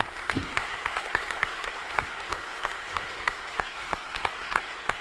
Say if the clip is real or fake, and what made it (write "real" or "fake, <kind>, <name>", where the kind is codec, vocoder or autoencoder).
fake, codec, SNAC